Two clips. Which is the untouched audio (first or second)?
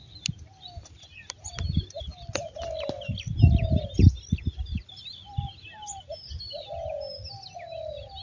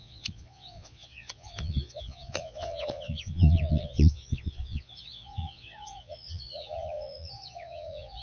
first